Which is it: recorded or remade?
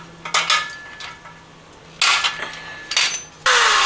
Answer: recorded